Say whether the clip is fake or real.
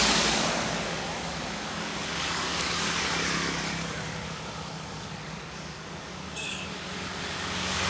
fake